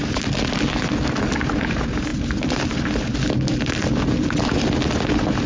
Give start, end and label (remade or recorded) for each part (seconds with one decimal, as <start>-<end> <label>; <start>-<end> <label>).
0.0-5.5 recorded